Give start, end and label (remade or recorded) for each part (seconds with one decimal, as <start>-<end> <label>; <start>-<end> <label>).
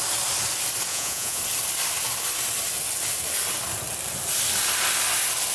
0.0-0.9 recorded; 0.9-1.4 remade; 1.4-5.5 recorded